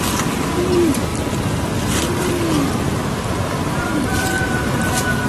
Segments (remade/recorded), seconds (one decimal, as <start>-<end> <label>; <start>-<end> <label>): 0.0-5.3 recorded